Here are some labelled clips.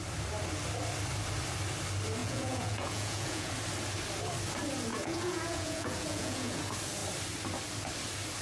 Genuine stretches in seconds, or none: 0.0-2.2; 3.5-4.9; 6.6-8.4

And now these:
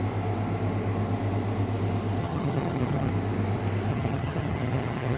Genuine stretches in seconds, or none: 0.0-2.2; 3.1-3.9

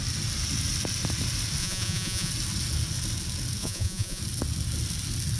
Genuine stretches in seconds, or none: 0.0-1.6; 2.3-3.6; 4.2-5.4

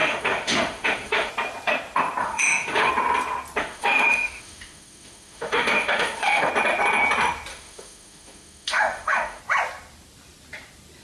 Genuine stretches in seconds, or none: 1.3-2.2; 2.9-3.6; 6.5-7.5; 9.4-11.0